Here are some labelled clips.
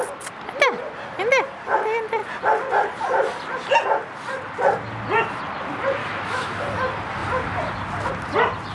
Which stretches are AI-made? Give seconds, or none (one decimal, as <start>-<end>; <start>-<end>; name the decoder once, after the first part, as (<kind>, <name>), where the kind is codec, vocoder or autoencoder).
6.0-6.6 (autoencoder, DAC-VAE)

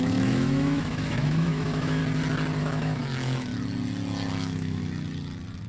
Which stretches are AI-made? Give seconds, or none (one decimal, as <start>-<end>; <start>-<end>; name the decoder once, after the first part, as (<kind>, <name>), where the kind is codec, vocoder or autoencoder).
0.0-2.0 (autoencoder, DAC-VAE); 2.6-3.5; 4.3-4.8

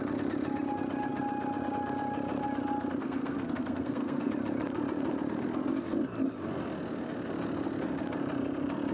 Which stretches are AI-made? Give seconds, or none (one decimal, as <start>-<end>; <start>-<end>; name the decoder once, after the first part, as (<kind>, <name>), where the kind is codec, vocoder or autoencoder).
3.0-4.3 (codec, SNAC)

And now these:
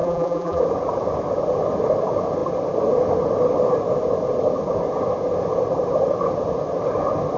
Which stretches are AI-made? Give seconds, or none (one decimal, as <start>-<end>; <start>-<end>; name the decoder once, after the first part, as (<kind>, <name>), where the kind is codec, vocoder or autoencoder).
0.0-0.6 (vocoder, BigVGAN v2)

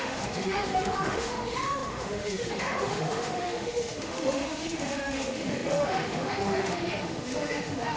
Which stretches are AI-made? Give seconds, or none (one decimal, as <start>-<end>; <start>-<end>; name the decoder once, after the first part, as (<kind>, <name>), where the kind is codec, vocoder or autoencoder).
0.0-8.0 (autoencoder, DAC-VAE)

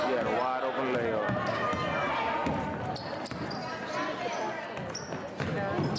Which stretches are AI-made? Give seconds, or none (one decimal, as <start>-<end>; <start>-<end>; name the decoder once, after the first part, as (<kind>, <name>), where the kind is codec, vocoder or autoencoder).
none